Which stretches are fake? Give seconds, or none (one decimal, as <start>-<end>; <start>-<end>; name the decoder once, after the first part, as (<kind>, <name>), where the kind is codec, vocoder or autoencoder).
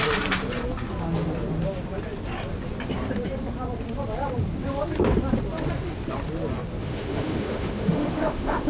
6.8-8.7 (autoencoder, DAC-VAE)